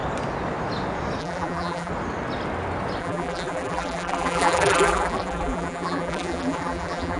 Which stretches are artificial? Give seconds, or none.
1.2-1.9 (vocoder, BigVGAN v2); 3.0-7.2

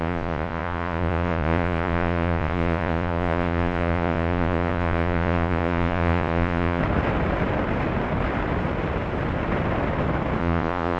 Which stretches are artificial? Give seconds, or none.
0.0-6.8 (vocoder, Vocos); 10.4-11.0

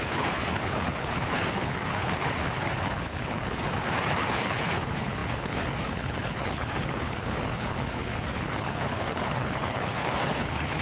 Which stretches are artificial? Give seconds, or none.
0.0-10.8 (codec, HILCodec)

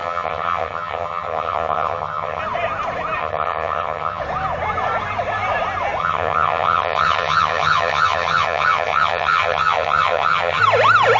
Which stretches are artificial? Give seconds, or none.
0.0-2.4 (vocoder, HiFi-GAN); 3.2-4.2; 6.0-10.6